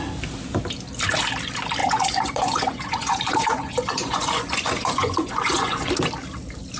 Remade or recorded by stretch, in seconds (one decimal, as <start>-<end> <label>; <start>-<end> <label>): 0.0-1.8 recorded; 1.8-5.9 remade; 5.9-6.8 recorded